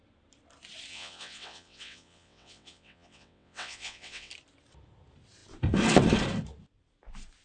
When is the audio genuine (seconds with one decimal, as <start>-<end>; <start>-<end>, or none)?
0.0-0.9; 4.3-7.4